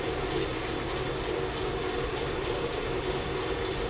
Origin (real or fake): real